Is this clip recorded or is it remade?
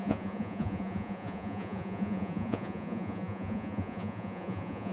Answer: remade